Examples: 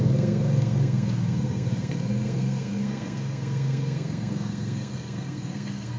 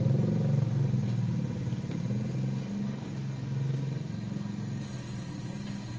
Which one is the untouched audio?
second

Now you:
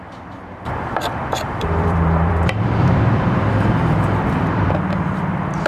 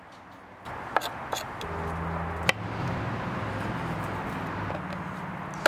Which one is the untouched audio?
second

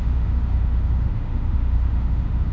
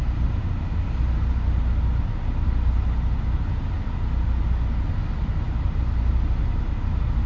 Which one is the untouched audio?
second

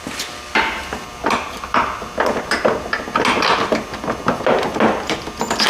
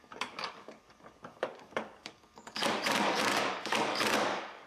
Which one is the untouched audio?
first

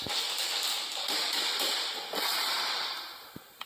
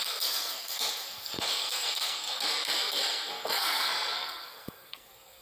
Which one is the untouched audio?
first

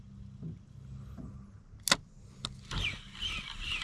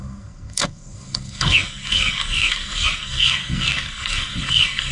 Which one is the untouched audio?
first